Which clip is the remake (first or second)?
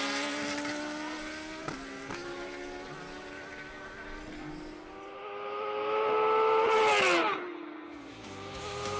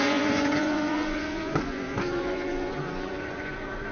second